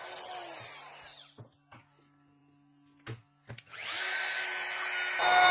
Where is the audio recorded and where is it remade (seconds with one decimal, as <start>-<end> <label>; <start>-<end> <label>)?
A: 0.0-5.5 recorded